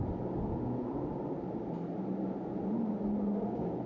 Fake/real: real